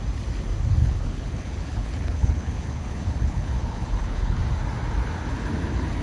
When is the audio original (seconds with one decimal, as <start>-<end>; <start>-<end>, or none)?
0.0-0.8; 4.4-6.0